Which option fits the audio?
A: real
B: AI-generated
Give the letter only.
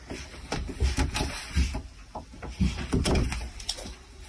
B